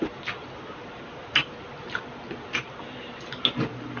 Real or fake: real